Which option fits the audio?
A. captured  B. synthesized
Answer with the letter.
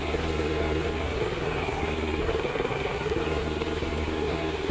B